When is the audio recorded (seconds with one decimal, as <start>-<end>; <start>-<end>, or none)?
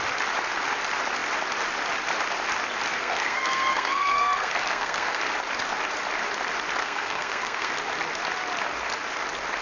0.0-2.9; 5.2-6.8; 7.7-9.6